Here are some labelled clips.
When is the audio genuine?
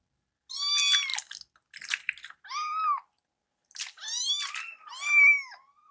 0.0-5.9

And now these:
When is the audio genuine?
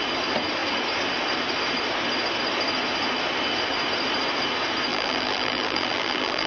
0.0-4.9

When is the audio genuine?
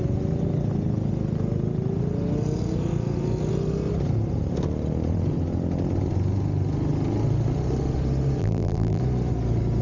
0.0-8.4; 9.0-9.8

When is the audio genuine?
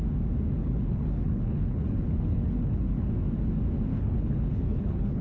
0.0-0.6; 3.1-3.9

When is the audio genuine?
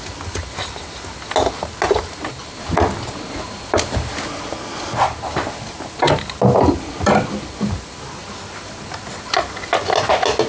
0.0-10.5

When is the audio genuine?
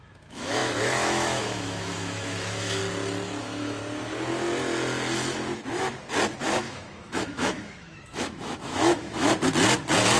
2.8-3.4; 3.8-6.4; 9.3-10.2